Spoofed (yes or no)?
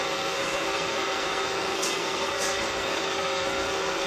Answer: yes